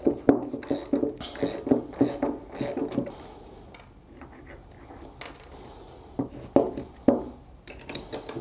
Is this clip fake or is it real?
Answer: real